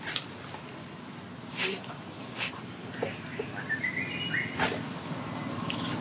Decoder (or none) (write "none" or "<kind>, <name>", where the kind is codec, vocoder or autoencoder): none